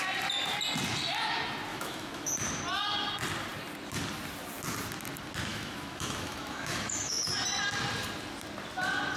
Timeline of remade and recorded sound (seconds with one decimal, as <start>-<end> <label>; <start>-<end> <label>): 0.0-1.7 recorded; 1.7-2.3 remade; 2.3-5.5 recorded; 5.5-7.3 remade; 7.3-9.2 recorded